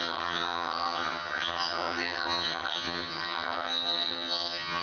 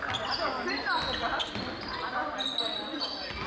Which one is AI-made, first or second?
first